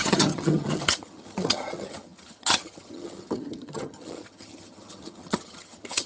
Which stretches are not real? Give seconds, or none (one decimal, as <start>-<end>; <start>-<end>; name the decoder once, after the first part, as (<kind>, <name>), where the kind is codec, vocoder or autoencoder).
0.0-6.1 (vocoder, HiFi-GAN)